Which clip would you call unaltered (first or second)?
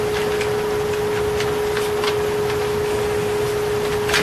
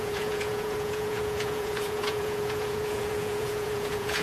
first